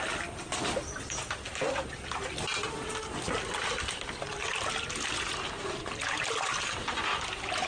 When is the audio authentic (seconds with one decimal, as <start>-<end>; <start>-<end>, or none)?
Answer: 0.0-4.4; 5.1-7.7